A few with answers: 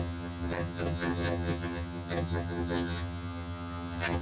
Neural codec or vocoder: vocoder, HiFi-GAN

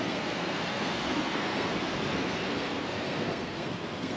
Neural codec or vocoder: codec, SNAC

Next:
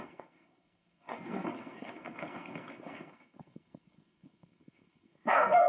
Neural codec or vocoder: codec, SNAC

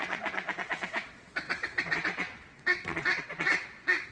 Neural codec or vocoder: vocoder, WaveNeXt